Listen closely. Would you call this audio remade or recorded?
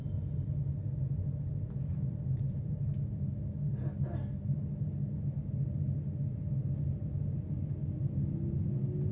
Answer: recorded